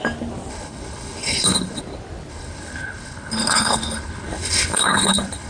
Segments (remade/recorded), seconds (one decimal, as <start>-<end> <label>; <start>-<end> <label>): 0.0-0.5 recorded; 0.5-1.8 remade; 1.8-2.3 recorded; 2.3-5.5 remade